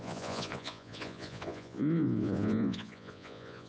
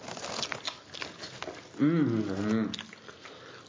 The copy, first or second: first